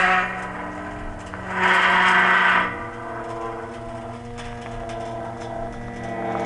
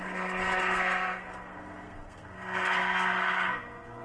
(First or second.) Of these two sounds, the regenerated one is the second